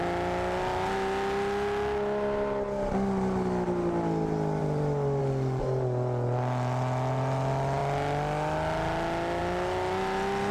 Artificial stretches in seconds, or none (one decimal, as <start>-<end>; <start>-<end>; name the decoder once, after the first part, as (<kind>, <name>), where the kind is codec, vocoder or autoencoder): 4.6-5.2 (vocoder, BigVGAN v2)